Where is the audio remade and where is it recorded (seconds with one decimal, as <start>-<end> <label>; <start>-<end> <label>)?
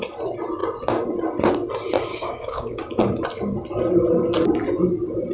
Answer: 0.0-2.1 recorded; 2.1-2.8 remade; 2.8-5.3 recorded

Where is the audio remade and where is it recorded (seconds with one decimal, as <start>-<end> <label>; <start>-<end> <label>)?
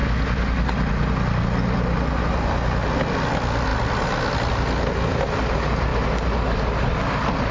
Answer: 0.0-7.5 recorded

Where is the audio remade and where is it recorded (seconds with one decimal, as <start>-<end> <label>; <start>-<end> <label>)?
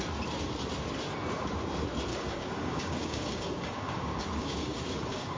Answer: 0.0-2.1 recorded; 2.1-5.4 remade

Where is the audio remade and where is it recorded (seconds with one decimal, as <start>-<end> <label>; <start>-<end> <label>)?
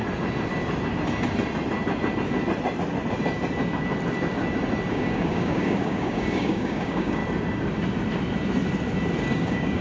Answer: 0.0-4.9 recorded; 4.9-7.2 remade; 7.2-9.2 recorded; 9.2-9.8 remade